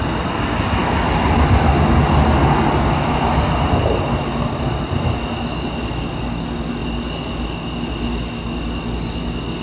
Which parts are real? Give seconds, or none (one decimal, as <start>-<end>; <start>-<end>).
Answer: 0.0-9.6